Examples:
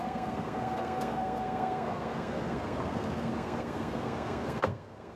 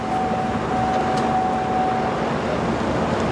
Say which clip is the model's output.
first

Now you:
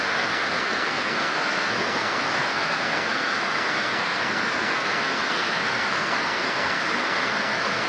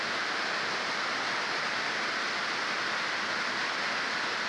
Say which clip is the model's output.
first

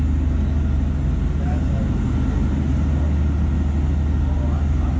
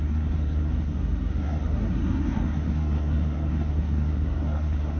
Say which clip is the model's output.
second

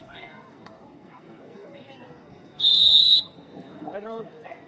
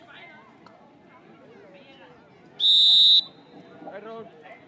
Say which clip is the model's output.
first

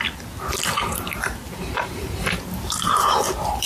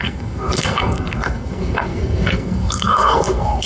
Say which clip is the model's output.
second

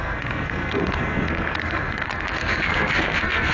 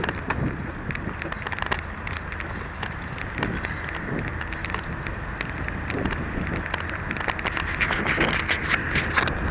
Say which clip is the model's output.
first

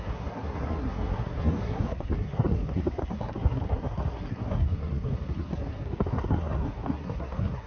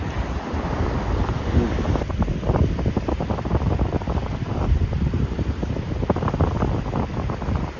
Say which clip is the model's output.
first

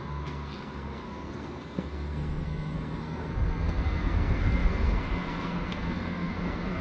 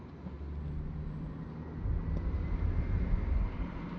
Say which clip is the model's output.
first